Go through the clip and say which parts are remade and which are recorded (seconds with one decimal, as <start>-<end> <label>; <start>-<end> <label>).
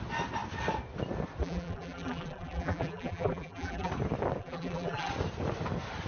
0.0-1.4 recorded; 1.4-3.9 remade; 3.9-4.4 recorded; 4.4-5.1 remade; 5.1-6.1 recorded